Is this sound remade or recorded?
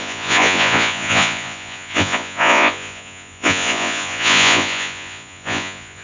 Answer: remade